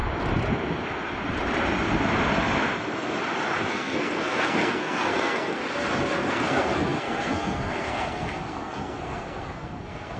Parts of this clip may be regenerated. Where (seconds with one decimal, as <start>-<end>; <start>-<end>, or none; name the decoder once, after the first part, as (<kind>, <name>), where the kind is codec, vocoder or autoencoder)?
3.7-5.6 (codec, SNAC); 6.3-10.2